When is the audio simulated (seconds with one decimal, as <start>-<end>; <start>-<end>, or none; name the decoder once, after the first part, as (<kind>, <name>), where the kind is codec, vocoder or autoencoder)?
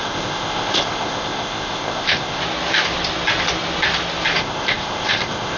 0.0-2.4 (codec, ZipCodec); 4.4-5.6